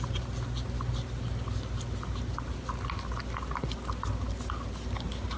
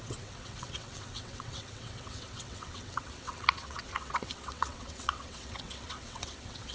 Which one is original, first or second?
first